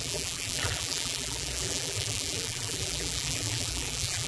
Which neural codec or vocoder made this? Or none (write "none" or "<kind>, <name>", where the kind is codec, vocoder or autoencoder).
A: vocoder, BigVGAN v2